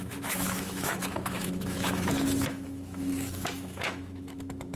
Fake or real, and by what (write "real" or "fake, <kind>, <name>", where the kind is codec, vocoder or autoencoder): fake, autoencoder, DAC-VAE